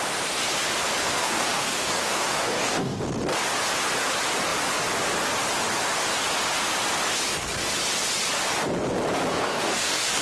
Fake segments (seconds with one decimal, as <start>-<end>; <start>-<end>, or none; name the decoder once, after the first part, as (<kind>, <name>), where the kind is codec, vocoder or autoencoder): 1.0-3.0 (codec, DAC); 9.3-10.2